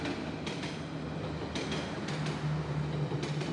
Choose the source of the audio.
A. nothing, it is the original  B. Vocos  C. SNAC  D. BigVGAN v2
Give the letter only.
A